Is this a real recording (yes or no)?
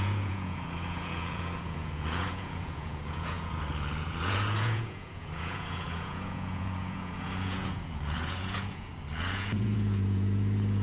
no